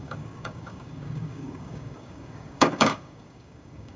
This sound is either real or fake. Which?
fake